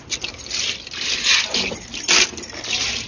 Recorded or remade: recorded